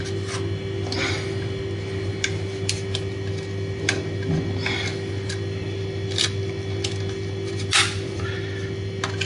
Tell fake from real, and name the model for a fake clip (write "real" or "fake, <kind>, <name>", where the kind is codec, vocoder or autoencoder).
real